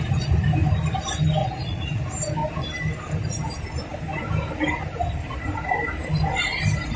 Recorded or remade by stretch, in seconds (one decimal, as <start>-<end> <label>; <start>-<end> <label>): 0.0-1.4 recorded; 1.4-2.0 remade; 2.0-7.0 recorded